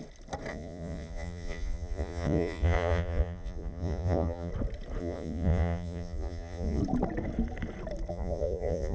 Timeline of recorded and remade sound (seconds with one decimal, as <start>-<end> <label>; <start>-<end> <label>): 0.0-0.5 recorded; 0.5-4.5 remade; 4.5-5.0 recorded; 5.0-6.8 remade; 6.8-8.1 recorded; 8.1-8.9 remade